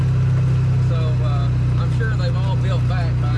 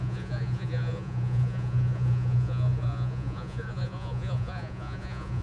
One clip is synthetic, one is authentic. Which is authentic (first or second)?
first